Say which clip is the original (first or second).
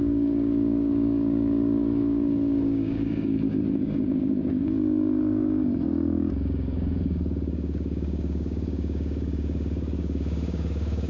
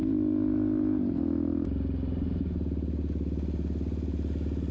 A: second